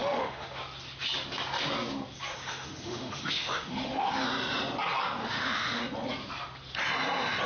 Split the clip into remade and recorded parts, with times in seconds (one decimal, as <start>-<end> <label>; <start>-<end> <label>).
0.0-0.6 remade; 0.6-2.3 recorded; 2.3-4.1 remade; 4.1-5.2 recorded; 5.2-5.8 remade; 5.8-7.5 recorded